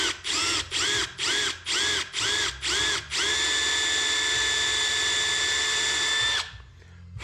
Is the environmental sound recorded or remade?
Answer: recorded